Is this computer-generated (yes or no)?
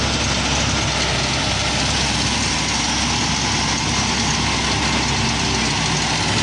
no